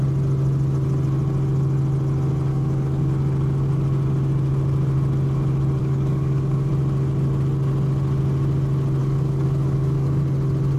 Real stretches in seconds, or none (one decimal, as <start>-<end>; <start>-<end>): 0.0-2.5; 3.1-5.8; 6.7-9.0; 10.2-10.8